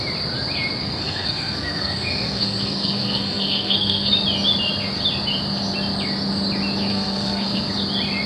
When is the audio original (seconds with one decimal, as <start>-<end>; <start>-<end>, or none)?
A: 0.0-0.8; 4.1-6.9; 7.7-8.3